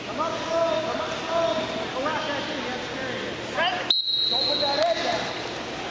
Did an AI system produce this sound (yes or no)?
no